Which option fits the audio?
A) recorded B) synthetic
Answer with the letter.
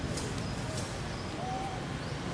A